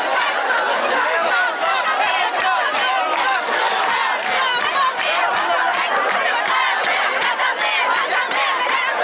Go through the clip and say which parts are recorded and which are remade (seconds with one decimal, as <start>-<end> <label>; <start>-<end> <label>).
0.0-0.7 recorded; 0.7-1.3 remade; 1.3-3.1 recorded; 3.1-3.9 remade; 3.9-9.0 recorded